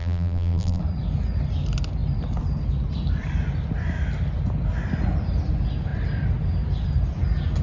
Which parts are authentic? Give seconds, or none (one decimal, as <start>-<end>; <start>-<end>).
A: 0.8-7.6